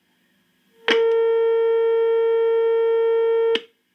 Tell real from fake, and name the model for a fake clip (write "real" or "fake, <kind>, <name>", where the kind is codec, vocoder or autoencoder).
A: real